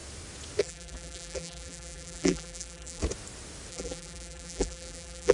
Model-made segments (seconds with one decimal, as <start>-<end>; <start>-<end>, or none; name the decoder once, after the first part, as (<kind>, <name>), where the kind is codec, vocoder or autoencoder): 0.6-3.0 (vocoder, BigVGAN v2); 3.7-5.3